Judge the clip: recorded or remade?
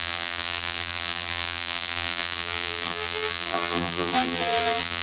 remade